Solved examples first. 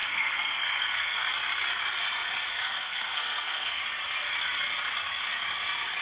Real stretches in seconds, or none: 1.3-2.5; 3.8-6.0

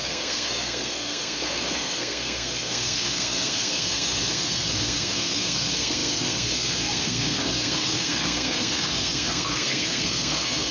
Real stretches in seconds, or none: none

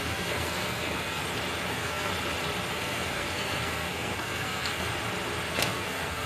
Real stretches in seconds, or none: 1.2-1.7; 2.1-2.7; 4.9-5.5

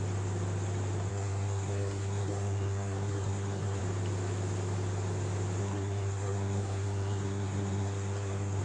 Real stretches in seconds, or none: 0.0-1.1; 3.8-5.6

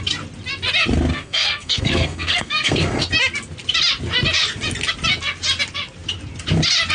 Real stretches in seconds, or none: 0.0-1.1; 3.0-6.9